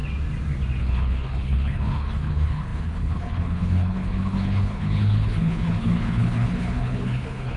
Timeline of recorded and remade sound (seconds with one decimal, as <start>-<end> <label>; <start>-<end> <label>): 0.0-0.8 recorded; 0.8-7.6 remade